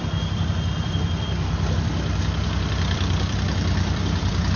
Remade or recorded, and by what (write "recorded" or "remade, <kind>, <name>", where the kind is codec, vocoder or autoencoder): remade, vocoder, BigVGAN v2